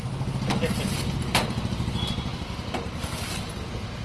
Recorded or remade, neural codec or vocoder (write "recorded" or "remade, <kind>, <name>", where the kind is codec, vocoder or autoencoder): recorded